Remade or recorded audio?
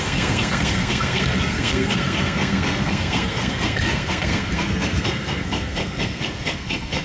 remade